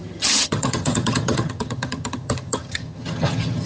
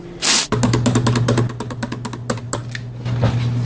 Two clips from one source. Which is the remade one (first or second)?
first